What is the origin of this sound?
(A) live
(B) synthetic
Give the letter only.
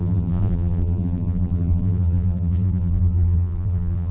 B